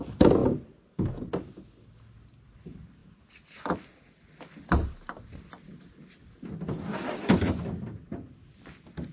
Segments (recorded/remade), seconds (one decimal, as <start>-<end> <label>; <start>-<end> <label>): 0.0-9.1 recorded